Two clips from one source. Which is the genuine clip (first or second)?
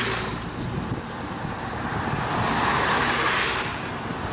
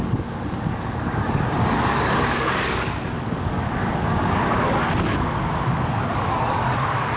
first